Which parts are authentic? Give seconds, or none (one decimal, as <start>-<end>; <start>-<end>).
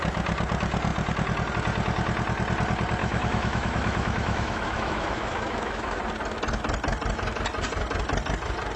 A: 0.0-3.0; 6.0-8.8